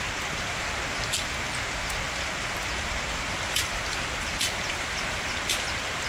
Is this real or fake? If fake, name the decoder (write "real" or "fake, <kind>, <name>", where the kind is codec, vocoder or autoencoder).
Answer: real